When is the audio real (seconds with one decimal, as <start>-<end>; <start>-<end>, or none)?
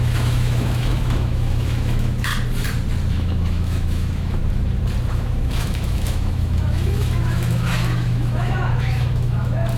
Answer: 2.3-3.1; 4.4-5.1